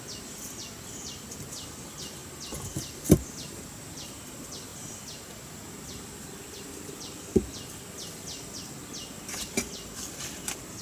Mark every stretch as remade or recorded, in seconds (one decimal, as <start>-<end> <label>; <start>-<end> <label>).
0.0-10.8 recorded

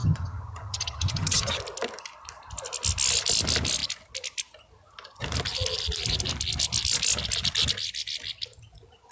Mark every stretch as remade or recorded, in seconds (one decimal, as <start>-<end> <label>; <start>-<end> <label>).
0.0-1.6 remade; 1.6-9.1 recorded

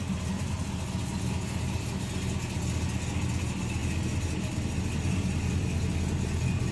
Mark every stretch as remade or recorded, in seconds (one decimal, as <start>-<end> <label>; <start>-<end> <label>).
0.0-6.7 recorded

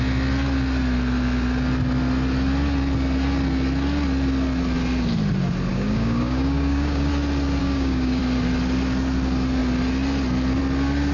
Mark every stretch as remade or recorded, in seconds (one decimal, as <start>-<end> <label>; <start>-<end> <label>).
0.0-5.7 recorded; 5.7-7.1 remade; 7.1-7.6 recorded; 7.6-8.2 remade; 8.2-11.1 recorded

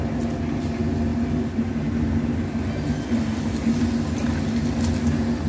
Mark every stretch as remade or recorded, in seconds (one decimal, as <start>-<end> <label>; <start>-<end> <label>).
0.0-5.5 recorded

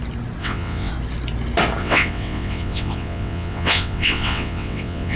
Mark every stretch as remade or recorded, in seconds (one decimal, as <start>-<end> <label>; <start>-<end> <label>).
0.0-0.4 recorded; 0.4-0.9 remade; 0.9-1.8 recorded; 1.8-5.2 remade